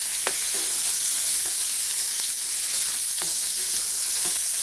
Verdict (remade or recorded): remade